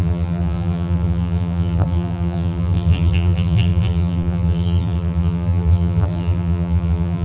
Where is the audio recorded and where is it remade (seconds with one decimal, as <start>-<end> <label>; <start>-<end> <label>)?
0.0-7.2 remade